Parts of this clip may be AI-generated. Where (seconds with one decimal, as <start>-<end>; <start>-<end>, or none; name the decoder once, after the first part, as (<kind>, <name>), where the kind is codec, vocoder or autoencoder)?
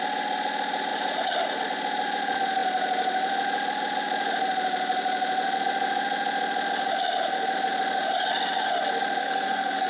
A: 9.2-9.9 (codec, SNAC)